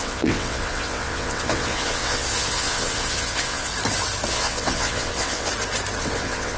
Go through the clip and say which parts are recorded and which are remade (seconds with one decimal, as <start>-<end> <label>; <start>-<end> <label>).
0.0-3.7 remade; 3.7-4.3 recorded; 4.3-5.5 remade; 5.5-6.0 recorded; 6.0-6.6 remade

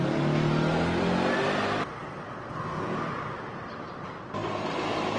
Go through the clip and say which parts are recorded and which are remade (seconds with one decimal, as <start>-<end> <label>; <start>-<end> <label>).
0.0-5.2 recorded